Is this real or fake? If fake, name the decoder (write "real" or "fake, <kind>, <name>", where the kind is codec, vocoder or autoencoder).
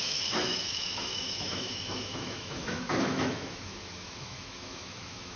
fake, autoencoder, DAC-VAE